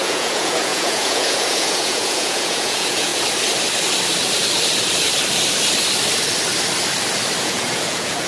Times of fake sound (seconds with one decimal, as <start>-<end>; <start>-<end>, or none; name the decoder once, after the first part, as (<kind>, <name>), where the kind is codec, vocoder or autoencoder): 0.0-3.1 (vocoder, Vocos); 7.4-8.3